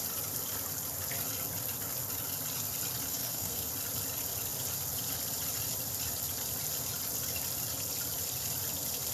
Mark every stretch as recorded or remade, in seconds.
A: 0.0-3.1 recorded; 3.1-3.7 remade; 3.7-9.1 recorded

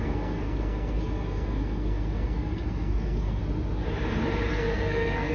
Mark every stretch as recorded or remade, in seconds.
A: 0.0-3.4 remade; 3.4-4.5 recorded; 4.5-5.3 remade

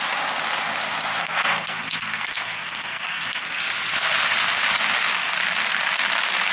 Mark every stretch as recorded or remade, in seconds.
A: 0.0-1.2 recorded; 1.2-3.6 remade; 3.6-6.5 recorded